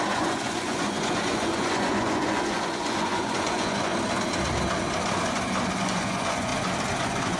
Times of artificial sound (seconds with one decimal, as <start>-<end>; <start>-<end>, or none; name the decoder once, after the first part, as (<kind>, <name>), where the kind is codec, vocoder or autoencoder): 0.0-3.9 (vocoder, Vocos); 5.8-6.5; 7.0-7.4